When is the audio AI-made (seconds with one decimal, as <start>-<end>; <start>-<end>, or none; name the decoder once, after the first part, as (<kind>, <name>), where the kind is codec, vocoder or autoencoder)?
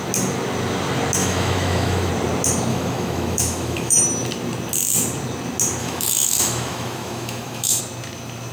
1.2-2.1 (autoencoder, DAC-VAE); 2.7-4.0; 5.8-7.8